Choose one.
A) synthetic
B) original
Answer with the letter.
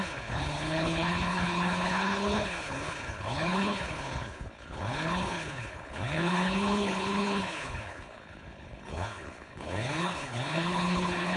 A